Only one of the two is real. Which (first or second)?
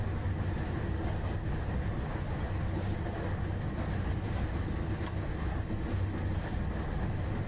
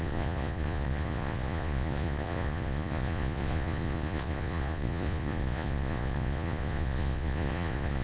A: first